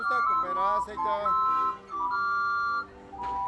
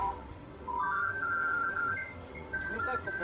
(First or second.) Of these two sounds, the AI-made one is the second